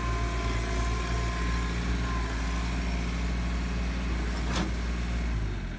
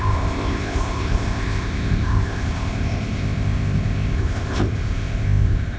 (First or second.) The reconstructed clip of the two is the second